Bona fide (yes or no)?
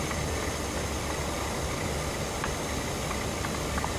yes